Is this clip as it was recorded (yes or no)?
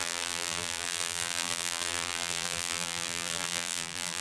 no